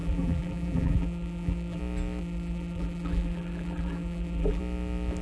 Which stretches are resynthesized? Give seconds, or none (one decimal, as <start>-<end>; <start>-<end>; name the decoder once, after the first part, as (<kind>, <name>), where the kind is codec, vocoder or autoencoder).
0.0-1.8 (vocoder, BigVGAN v2); 2.2-4.6